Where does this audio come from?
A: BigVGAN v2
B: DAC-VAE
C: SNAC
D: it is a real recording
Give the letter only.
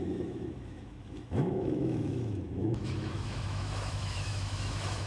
B